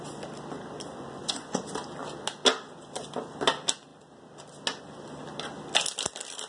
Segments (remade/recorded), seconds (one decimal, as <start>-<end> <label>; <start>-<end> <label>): 0.0-0.9 recorded; 0.9-1.6 remade; 1.6-6.5 recorded